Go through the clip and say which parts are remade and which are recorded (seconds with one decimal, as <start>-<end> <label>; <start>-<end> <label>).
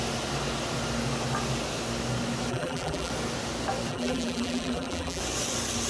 0.0-2.5 recorded; 2.5-3.1 remade; 3.1-3.9 recorded; 3.9-5.2 remade; 5.2-5.9 recorded